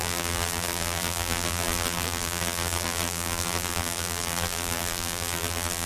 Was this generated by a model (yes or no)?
yes